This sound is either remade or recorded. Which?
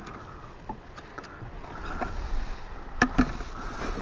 recorded